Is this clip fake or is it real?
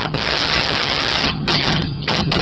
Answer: fake